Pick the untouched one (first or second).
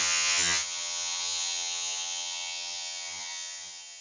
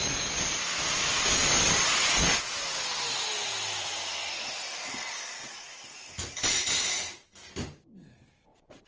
second